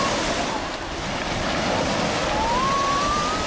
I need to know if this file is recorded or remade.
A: recorded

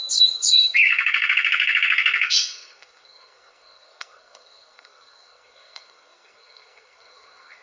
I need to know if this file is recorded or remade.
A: remade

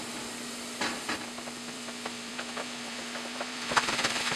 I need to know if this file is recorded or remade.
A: remade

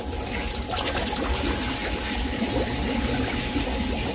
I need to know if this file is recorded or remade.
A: recorded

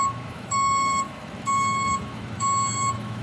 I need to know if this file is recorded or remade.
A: remade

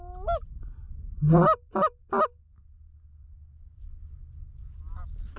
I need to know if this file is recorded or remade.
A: recorded